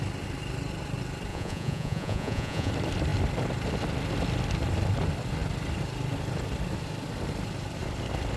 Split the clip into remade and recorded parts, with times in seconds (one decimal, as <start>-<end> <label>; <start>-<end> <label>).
0.0-1.3 recorded; 1.3-2.7 remade; 2.7-8.4 recorded